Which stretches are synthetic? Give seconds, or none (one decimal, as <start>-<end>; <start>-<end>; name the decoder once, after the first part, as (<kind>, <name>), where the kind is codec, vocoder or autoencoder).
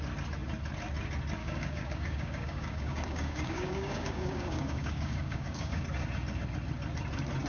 1.4-5.8 (codec, DAC)